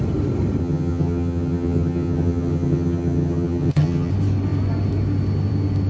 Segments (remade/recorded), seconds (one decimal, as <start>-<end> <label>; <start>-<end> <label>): 0.0-0.6 recorded; 0.6-4.1 remade; 4.1-5.9 recorded